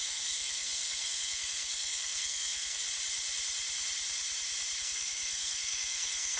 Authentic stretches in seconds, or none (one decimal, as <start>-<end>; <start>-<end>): 2.8-4.8